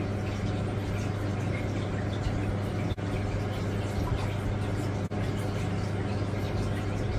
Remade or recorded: recorded